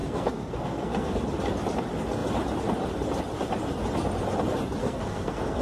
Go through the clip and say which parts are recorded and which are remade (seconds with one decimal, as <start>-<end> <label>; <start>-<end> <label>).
0.0-1.2 remade; 1.2-4.8 recorded; 4.8-5.6 remade